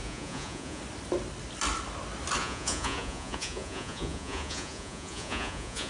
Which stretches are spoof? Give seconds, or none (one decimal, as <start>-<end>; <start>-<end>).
0.0-0.8; 2.4-5.9